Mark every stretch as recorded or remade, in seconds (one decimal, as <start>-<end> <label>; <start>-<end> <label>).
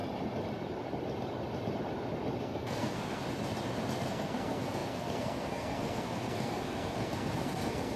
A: 0.0-2.4 recorded; 2.4-3.2 remade; 3.2-4.1 recorded; 4.1-8.0 remade